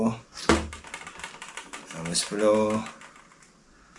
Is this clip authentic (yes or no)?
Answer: yes